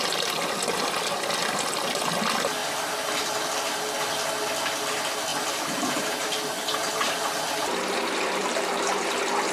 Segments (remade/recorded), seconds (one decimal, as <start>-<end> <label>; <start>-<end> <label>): 0.0-5.3 recorded; 5.3-7.3 remade; 7.3-8.4 recorded; 8.4-9.0 remade; 9.0-9.5 recorded